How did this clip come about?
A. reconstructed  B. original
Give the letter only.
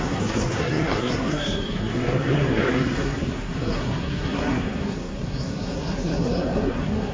A